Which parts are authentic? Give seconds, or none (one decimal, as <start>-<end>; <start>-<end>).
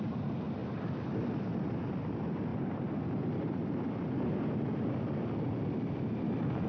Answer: 0.0-6.7